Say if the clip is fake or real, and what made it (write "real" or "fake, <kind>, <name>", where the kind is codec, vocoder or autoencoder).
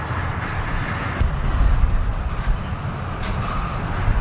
real